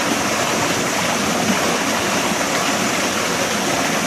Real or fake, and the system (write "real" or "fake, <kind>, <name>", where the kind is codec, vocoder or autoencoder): real